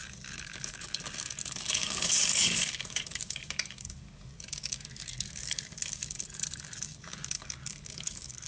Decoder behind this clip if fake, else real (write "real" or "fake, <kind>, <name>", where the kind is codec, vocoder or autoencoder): fake, codec, DAC